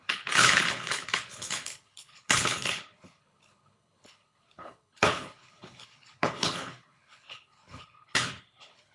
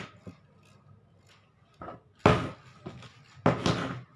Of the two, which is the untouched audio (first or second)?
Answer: second